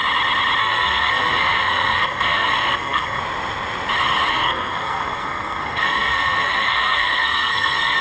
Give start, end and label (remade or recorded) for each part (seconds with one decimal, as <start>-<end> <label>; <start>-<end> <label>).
0.0-0.6 recorded; 0.6-3.2 remade; 3.2-4.3 recorded; 4.3-8.0 remade